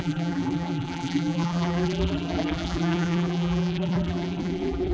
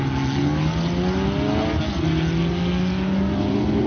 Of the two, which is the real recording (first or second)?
second